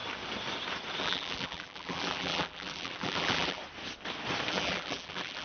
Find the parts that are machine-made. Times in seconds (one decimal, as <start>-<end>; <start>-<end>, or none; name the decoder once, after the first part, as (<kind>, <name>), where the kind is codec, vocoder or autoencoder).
1.0-3.6 (vocoder, BigVGAN v2); 4.5-5.4